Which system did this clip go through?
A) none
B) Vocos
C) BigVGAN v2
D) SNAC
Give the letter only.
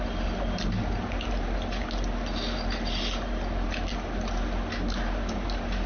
A